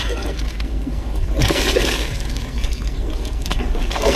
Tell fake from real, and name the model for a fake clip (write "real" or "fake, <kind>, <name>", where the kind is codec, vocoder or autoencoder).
fake, codec, SNAC